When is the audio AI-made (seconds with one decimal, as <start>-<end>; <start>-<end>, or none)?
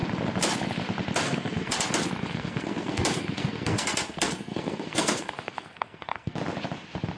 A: 1.2-1.7; 2.3-6.4